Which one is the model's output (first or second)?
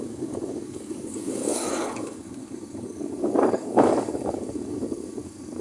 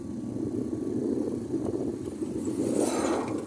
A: first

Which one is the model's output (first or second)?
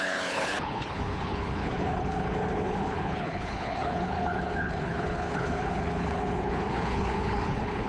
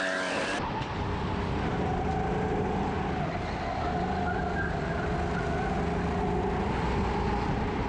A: first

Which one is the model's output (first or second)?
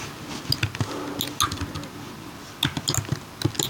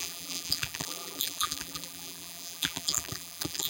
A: second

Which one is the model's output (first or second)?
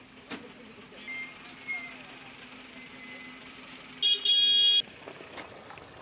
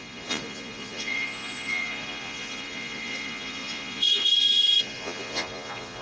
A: second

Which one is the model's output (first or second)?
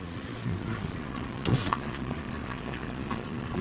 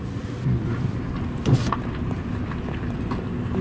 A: first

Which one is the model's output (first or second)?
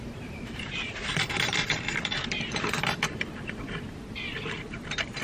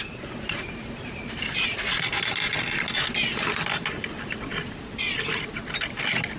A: first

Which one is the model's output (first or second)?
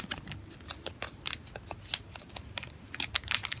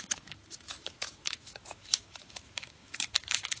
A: second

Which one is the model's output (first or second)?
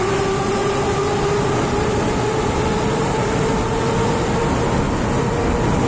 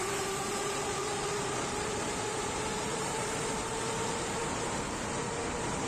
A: second